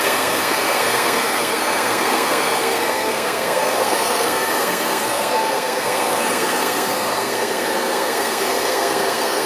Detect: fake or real fake